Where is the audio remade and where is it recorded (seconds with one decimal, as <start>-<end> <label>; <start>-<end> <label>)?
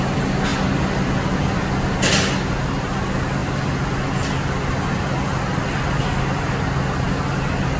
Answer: 0.0-7.8 recorded